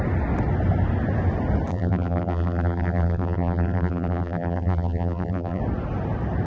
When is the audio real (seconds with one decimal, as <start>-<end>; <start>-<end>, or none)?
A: 0.0-1.7; 5.6-6.5